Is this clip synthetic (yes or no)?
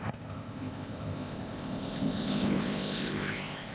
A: yes